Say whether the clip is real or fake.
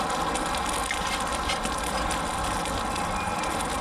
real